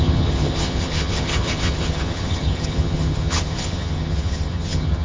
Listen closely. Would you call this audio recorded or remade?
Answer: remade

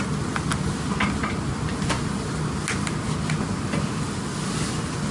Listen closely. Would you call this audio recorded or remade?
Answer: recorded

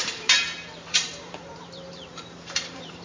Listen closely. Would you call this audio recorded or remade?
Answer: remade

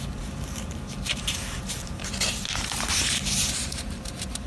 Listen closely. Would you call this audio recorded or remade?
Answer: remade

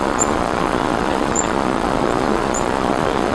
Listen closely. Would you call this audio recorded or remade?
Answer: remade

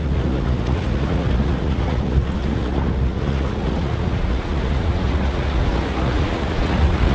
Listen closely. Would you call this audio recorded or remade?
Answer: remade